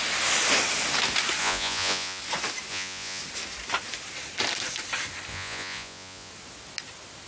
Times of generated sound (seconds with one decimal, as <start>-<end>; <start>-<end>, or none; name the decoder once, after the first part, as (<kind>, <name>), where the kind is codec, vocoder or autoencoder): 1.4-2.2 (vocoder, Vocos); 2.7-3.2; 5.3-6.3